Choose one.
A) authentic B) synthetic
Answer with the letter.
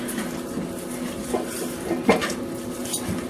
A